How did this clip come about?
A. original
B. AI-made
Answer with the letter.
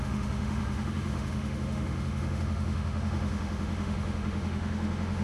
B